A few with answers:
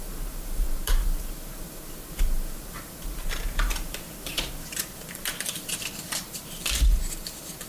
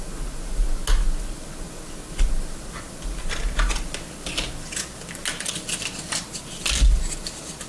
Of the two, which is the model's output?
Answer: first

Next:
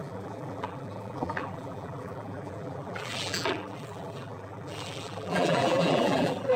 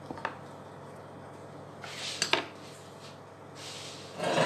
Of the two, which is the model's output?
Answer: first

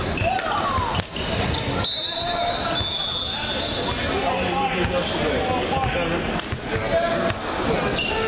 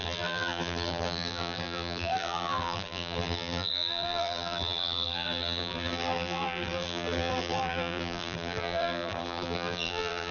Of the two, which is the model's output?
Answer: second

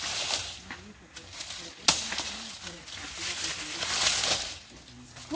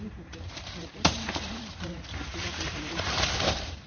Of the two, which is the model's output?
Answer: second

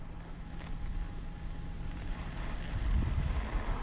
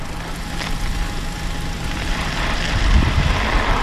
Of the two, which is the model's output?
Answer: second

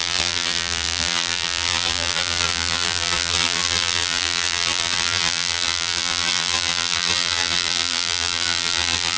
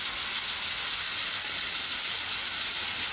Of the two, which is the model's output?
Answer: first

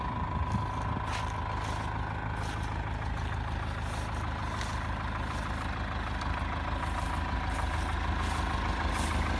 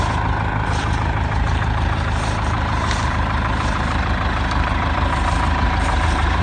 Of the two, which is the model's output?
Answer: second